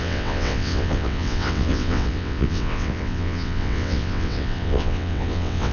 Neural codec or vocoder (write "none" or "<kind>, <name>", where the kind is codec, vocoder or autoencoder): vocoder, WaveNeXt